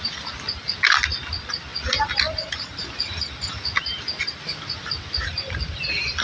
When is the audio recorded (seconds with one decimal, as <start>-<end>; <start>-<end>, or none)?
0.0-6.2